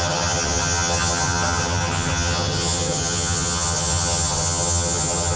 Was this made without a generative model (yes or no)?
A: no